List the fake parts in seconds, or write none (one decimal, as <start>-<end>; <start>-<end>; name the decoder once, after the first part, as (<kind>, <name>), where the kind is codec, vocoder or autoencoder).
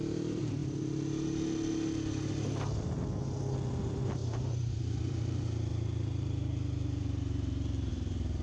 0.0-0.6 (vocoder, BigVGAN v2); 3.8-8.4